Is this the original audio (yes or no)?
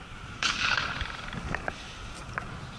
yes